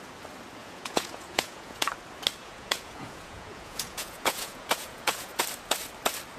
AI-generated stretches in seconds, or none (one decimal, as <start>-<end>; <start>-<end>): 0.6-1.9; 2.4-5.3

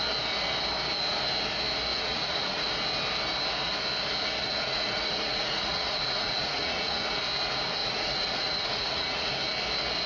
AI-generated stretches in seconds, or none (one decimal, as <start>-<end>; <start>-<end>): 1.9-2.7; 4.4-7.0; 7.8-9.3

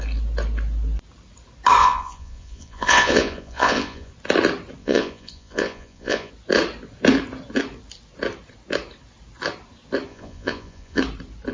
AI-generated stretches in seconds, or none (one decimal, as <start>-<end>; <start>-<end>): 1.8-4.1; 4.8-6.3; 10.1-11.0

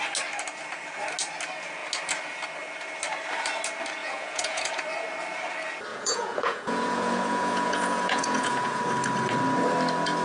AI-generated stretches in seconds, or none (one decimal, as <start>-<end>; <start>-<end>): 4.0-4.7; 5.9-8.8

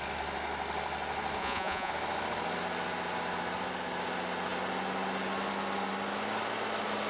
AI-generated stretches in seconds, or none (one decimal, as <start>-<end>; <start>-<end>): 1.4-1.9

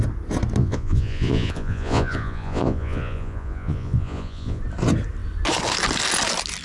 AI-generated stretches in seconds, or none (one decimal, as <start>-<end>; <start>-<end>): 0.6-4.6

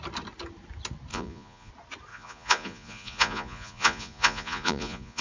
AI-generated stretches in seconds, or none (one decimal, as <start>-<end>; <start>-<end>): 1.1-1.7; 2.1-5.2